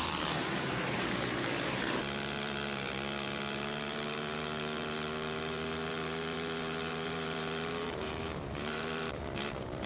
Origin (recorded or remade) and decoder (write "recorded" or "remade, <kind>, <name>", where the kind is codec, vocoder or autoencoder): remade, vocoder, BigVGAN v2